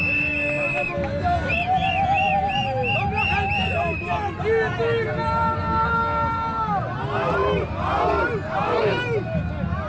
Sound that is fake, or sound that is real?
real